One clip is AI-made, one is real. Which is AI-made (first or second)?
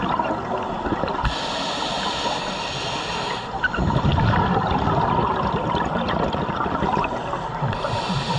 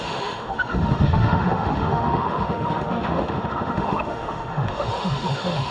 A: second